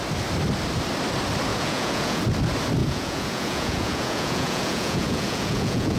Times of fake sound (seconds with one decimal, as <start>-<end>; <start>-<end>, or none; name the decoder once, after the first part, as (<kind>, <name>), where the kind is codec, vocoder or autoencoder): 1.5-2.2 (vocoder, Vocos); 2.8-6.0